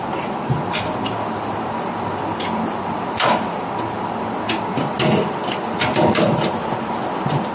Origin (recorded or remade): recorded